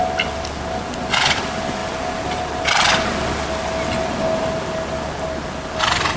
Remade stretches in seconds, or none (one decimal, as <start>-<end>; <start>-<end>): none

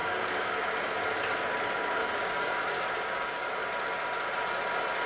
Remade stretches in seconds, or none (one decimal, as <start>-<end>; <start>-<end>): 0.0-0.6; 2.0-3.7

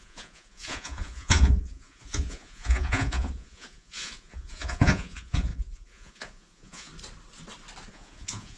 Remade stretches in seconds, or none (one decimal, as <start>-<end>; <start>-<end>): 0.0-6.9; 7.9-8.6